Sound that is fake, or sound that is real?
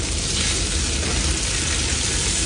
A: real